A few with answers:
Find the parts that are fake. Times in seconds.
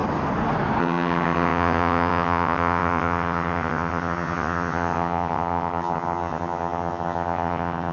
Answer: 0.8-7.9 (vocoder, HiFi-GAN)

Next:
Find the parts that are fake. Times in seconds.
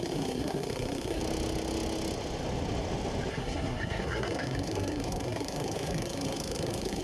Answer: 0.0-1.2 (codec, SNAC); 3.3-7.0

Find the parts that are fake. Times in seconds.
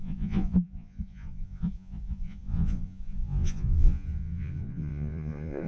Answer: 0.0-5.7 (vocoder, Vocos)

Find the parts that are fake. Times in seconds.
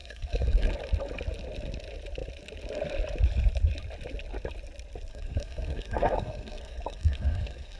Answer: 0.0-0.7 (codec, SNAC); 5.1-7.8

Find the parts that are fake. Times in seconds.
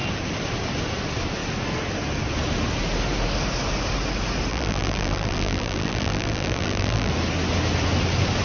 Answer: 4.5-7.1 (vocoder, BigVGAN v2)